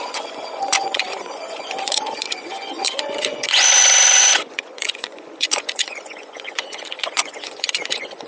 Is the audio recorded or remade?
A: remade